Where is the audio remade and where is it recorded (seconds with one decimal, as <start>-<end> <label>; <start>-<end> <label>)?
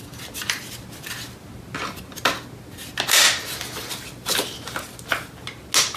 0.0-6.0 recorded